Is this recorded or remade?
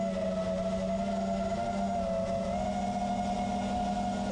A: recorded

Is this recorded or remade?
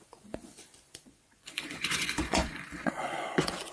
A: remade